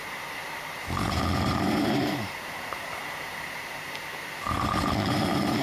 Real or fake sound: fake